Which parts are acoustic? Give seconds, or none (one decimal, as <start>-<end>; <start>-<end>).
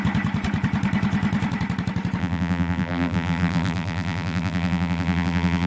0.0-2.2